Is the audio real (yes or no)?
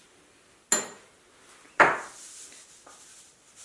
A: yes